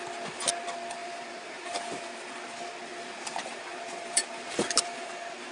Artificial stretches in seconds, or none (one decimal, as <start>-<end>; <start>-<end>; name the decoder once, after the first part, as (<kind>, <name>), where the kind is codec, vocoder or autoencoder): 1.0-2.2 (vocoder, BigVGAN v2); 2.9-5.1